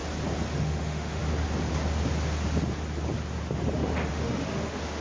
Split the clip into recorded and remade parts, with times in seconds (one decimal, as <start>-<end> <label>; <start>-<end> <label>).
0.0-0.5 recorded; 0.5-1.2 remade; 1.2-4.1 recorded; 4.1-5.0 remade